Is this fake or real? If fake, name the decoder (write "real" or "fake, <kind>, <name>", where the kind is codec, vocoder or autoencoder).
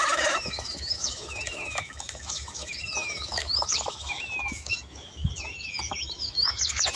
fake, autoencoder, DAC-VAE